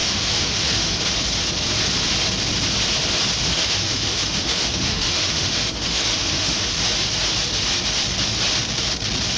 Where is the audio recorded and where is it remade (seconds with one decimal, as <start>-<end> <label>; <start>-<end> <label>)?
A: 0.0-1.0 remade; 1.0-3.5 recorded; 3.5-6.7 remade; 6.7-9.4 recorded